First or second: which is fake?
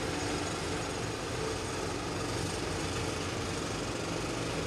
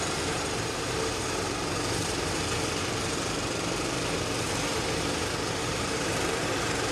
second